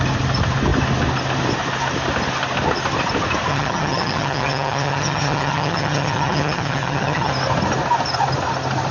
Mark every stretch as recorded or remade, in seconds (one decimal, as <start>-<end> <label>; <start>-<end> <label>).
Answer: 0.0-3.5 recorded; 3.5-7.3 remade; 7.3-8.9 recorded